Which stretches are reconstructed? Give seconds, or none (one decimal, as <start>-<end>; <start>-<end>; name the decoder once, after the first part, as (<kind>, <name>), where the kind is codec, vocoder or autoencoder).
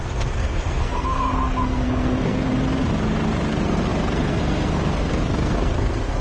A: 0.0-2.5 (codec, SNAC); 3.5-6.2